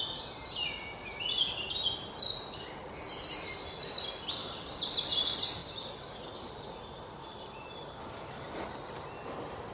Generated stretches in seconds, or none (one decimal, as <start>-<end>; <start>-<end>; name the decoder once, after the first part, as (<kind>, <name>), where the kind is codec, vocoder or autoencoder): 4.4-5.1 (vocoder, BigVGAN v2); 5.6-8.0